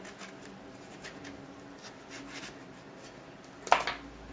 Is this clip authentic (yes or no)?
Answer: yes